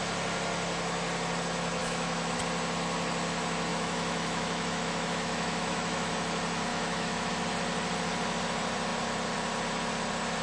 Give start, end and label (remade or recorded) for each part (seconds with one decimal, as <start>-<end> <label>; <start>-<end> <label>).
0.0-1.8 recorded; 1.8-2.4 remade; 2.4-3.7 recorded; 3.7-6.1 remade; 6.1-6.7 recorded; 6.7-7.3 remade; 7.3-10.4 recorded